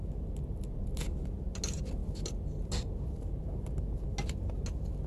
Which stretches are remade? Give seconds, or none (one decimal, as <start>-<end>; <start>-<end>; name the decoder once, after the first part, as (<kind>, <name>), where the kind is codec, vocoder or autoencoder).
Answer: none